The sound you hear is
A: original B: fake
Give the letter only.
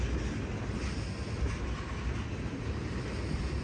A